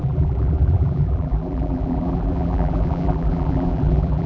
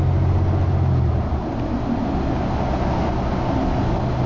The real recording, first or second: second